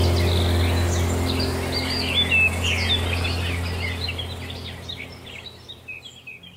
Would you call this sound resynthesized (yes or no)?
no